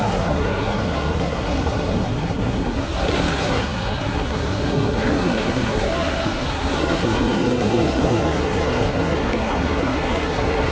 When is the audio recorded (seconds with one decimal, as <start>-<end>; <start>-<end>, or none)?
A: none